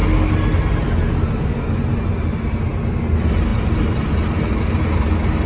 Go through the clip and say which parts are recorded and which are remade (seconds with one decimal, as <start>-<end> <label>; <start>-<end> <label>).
0.0-3.5 recorded; 3.5-4.8 remade; 4.8-5.5 recorded

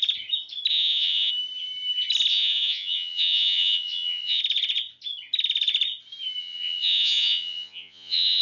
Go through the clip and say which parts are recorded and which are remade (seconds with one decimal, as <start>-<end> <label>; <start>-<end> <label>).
0.0-0.7 recorded; 0.7-1.3 remade; 1.3-2.3 recorded; 2.3-4.4 remade; 4.4-6.4 recorded; 6.4-8.4 remade